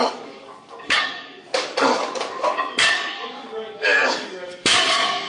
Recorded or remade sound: remade